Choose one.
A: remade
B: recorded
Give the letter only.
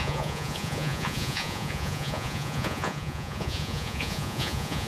A